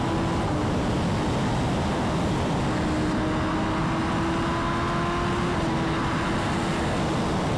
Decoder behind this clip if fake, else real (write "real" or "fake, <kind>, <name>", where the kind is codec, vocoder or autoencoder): real